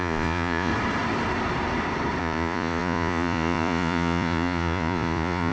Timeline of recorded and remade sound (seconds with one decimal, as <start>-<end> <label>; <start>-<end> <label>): 0.0-0.7 remade; 0.7-2.2 recorded; 2.2-5.5 remade

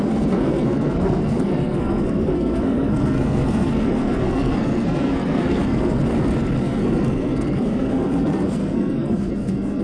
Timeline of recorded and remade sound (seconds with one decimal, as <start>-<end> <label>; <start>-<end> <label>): 0.0-6.0 remade; 6.0-6.6 recorded; 6.6-9.8 remade

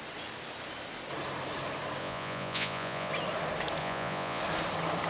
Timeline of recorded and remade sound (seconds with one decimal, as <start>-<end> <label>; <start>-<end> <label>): 0.0-2.0 recorded; 2.0-3.1 remade; 3.1-3.8 recorded; 3.8-4.4 remade; 4.4-5.1 recorded